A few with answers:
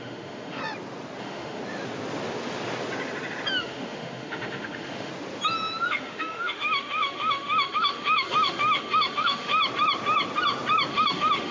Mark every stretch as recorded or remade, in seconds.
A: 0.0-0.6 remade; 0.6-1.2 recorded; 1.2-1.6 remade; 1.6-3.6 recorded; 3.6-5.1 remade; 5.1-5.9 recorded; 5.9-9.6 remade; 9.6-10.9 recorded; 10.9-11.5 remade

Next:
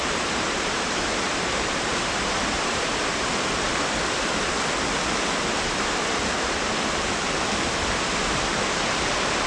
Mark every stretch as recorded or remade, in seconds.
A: 0.0-3.5 remade; 3.5-9.5 recorded

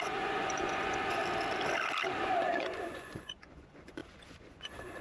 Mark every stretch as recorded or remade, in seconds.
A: 0.0-1.2 remade; 1.2-2.2 recorded; 2.2-5.0 remade

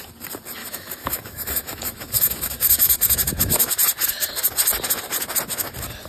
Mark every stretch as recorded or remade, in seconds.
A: 0.0-0.6 recorded; 0.6-3.7 remade; 3.7-6.1 recorded